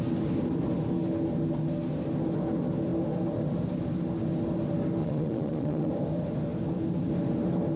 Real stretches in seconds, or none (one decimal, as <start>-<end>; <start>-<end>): 0.0-5.0; 5.9-7.8